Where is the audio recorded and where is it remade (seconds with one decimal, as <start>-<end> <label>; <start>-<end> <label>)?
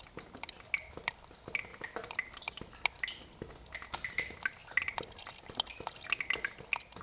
0.0-7.0 recorded